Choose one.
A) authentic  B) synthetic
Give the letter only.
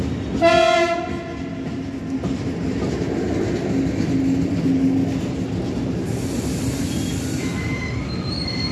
A